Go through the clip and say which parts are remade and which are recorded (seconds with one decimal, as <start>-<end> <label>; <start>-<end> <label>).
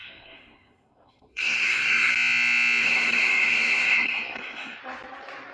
0.0-2.1 remade; 2.1-2.8 recorded; 2.8-4.8 remade; 4.8-5.5 recorded